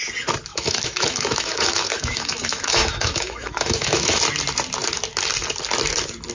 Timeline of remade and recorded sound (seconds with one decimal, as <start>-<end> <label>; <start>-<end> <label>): 0.0-0.5 recorded; 0.5-4.2 remade; 4.2-6.3 recorded

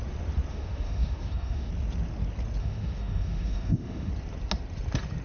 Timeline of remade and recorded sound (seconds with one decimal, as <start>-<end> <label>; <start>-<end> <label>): 0.0-0.5 recorded; 0.5-1.7 remade; 1.7-2.6 recorded; 2.6-4.1 remade; 4.1-5.2 recorded

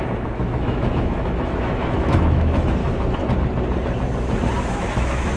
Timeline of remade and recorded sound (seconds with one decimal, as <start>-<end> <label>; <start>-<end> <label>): 0.0-2.8 remade; 2.8-4.6 recorded; 4.6-5.4 remade

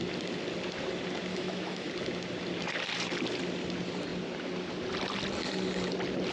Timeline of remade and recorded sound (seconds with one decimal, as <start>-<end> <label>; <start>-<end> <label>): 0.0-1.3 recorded; 1.3-1.9 remade; 1.9-6.3 recorded

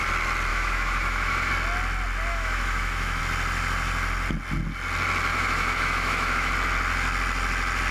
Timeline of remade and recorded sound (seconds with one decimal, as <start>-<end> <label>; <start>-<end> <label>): 0.0-0.5 recorded; 0.5-1.5 remade; 1.5-2.3 recorded; 2.3-3.2 remade; 3.2-5.3 recorded; 5.3-6.5 remade; 6.5-7.9 recorded

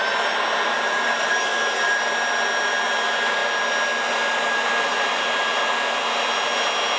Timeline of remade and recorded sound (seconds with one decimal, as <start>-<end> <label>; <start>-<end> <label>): 0.0-7.0 recorded

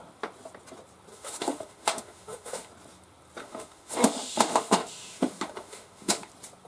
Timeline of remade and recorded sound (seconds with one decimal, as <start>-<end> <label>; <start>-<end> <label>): 0.0-1.1 recorded; 1.1-2.7 remade; 2.7-3.4 recorded; 3.4-6.3 remade; 6.3-6.7 recorded

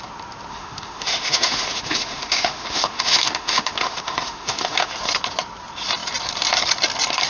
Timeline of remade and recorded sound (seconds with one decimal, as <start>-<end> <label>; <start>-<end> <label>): 0.0-0.5 recorded; 0.5-4.9 remade; 4.9-7.3 recorded